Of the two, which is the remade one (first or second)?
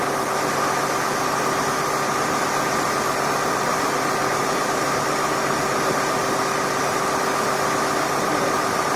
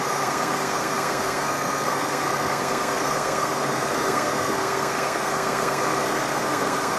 second